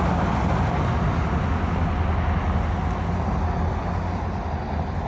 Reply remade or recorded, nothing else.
recorded